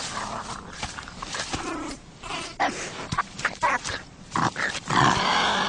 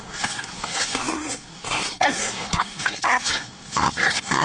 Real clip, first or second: first